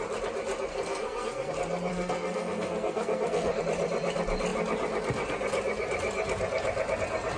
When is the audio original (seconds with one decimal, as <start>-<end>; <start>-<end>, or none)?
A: 0.0-0.7; 1.5-1.9; 3.6-7.4